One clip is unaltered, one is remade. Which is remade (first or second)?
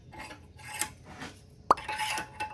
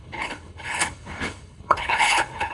second